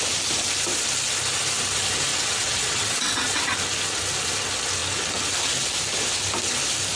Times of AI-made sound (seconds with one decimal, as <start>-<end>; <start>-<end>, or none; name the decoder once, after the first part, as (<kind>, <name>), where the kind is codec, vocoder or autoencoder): 2.1-3.4 (vocoder, WaveNeXt)